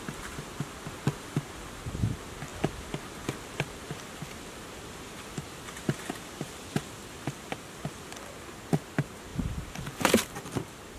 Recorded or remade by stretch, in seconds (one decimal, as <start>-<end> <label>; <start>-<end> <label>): 0.0-11.0 recorded

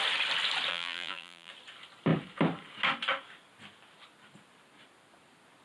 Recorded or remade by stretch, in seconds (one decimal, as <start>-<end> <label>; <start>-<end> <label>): 0.0-0.7 recorded; 0.7-1.5 remade; 1.5-5.6 recorded

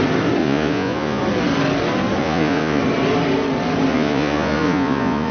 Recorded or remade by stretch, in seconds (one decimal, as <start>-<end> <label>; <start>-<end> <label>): 0.0-0.4 recorded; 0.4-1.2 remade; 1.2-2.2 recorded; 2.2-2.8 remade; 2.8-3.9 recorded; 3.9-5.3 remade

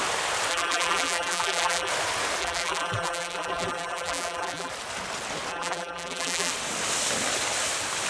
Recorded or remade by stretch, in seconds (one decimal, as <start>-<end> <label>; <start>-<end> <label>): 0.0-0.5 recorded; 0.5-1.9 remade; 1.9-2.4 recorded; 2.4-4.7 remade; 4.7-5.5 recorded; 5.5-6.5 remade; 6.5-8.1 recorded

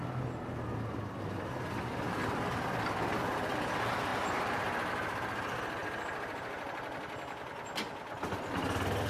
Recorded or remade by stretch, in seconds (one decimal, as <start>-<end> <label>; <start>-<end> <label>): 0.0-9.1 recorded

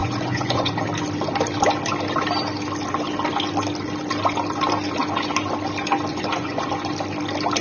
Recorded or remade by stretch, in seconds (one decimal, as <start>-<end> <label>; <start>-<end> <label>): 0.0-0.7 remade; 0.7-6.1 recorded; 6.1-6.6 remade; 6.6-7.6 recorded

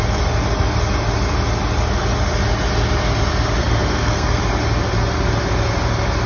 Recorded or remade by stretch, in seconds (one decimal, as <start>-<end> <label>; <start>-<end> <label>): 0.0-3.6 recorded; 3.6-4.4 remade; 4.4-6.3 recorded